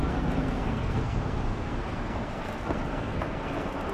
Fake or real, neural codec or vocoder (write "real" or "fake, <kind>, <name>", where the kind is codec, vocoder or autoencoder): fake, codec, SNAC